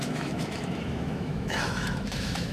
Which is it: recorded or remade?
remade